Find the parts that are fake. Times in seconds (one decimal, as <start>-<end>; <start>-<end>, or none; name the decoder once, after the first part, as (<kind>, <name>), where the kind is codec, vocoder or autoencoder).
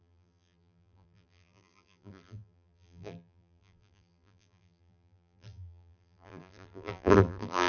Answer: 0.0-7.7 (vocoder, BigVGAN v2)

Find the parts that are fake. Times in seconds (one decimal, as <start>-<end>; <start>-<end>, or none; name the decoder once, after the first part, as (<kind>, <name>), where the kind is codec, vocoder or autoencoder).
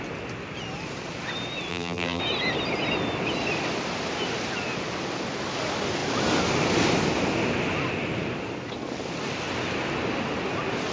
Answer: 1.7-2.2 (vocoder, BigVGAN v2)